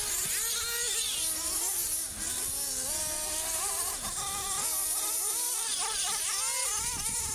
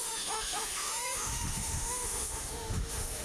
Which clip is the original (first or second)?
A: first